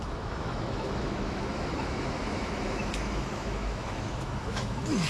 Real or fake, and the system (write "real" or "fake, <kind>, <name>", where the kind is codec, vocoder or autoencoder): fake, autoencoder, DAC-VAE